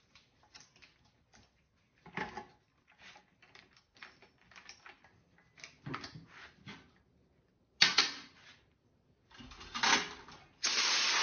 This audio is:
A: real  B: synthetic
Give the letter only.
A